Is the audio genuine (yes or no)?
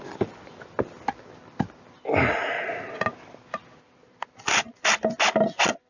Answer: yes